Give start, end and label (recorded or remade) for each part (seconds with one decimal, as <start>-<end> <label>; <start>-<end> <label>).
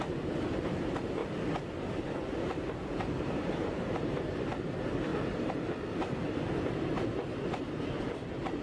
0.0-1.2 remade; 1.2-2.6 recorded; 2.6-5.1 remade; 5.1-8.0 recorded; 8.0-8.6 remade